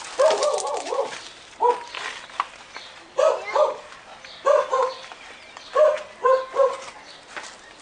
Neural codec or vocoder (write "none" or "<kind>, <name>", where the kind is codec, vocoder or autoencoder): none